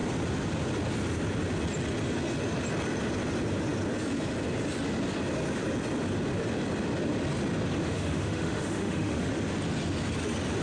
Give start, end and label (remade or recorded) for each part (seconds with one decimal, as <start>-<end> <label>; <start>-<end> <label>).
0.0-7.8 recorded; 7.8-9.3 remade; 9.3-10.6 recorded